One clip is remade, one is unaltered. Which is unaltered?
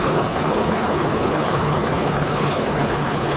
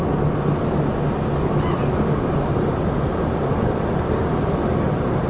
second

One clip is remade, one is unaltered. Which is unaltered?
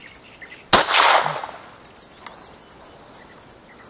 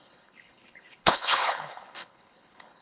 first